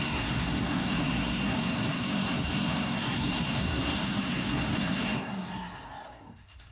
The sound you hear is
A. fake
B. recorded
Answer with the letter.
A